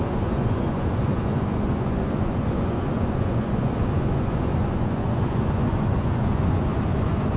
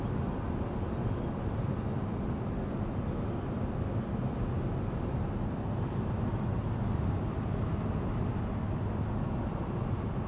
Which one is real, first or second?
second